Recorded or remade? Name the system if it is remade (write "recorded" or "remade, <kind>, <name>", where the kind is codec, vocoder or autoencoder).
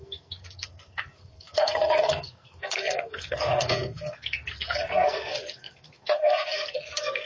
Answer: remade, codec, SNAC